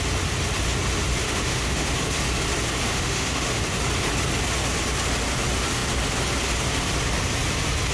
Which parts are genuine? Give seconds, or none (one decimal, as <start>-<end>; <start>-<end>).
0.0-1.2; 1.9-2.9; 3.6-7.9